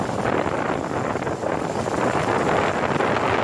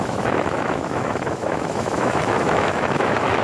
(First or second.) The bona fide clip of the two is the first